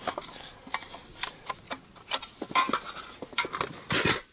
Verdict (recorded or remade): recorded